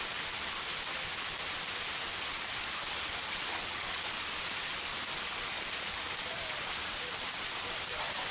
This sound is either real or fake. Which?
real